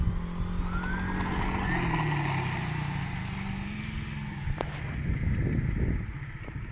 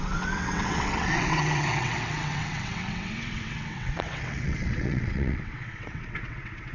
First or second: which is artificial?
second